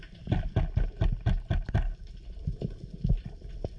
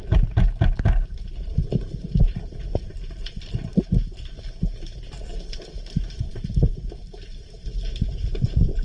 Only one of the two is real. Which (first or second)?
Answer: first